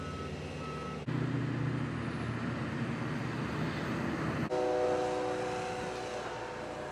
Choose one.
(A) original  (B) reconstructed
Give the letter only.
A